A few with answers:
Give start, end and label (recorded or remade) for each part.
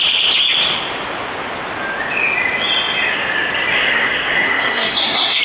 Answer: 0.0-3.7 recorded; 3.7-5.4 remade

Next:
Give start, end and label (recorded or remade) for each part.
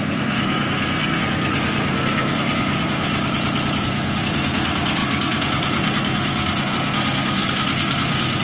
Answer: 0.0-3.1 remade; 3.1-3.8 recorded; 3.8-8.4 remade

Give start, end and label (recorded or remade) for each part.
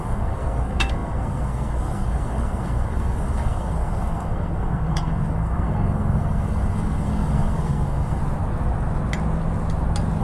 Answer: 0.0-8.2 remade; 8.2-10.2 recorded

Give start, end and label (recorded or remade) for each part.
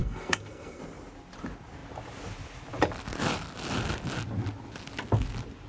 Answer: 0.0-0.8 remade; 0.8-5.7 recorded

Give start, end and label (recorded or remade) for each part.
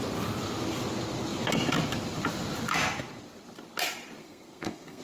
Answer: 0.0-4.2 recorded; 4.2-5.0 remade